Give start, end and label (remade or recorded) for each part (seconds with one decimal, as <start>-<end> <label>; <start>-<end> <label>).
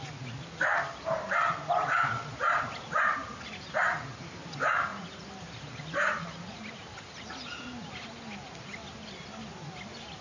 0.0-4.9 recorded; 4.9-7.3 remade; 7.3-10.2 recorded